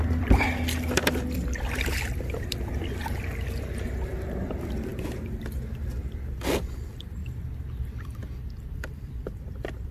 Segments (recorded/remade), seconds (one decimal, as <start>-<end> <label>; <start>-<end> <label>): 0.0-7.2 remade; 7.2-8.0 recorded; 8.0-9.9 remade